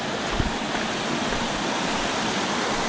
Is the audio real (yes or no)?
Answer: yes